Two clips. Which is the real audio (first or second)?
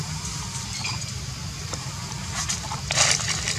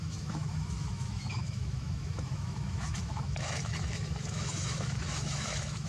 first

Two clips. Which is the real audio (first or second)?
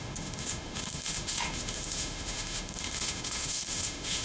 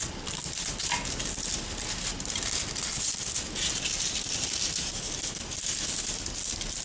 second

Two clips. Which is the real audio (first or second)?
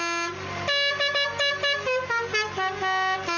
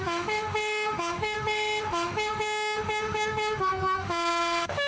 first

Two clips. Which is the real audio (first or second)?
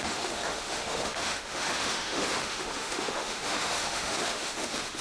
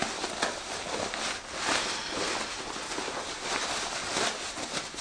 second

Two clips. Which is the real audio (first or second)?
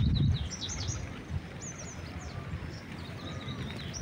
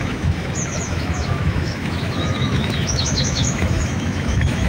first